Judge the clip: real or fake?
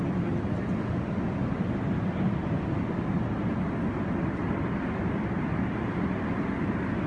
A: real